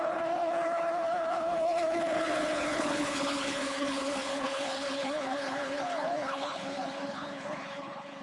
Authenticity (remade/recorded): remade